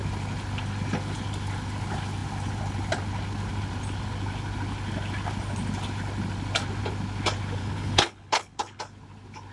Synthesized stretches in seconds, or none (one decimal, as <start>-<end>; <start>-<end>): 7.6-8.8